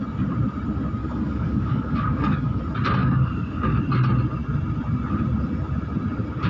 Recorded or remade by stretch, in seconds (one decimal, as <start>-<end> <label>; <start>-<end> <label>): 0.0-1.0 recorded; 1.0-2.6 remade; 2.6-3.0 recorded; 3.0-3.8 remade; 3.8-6.5 recorded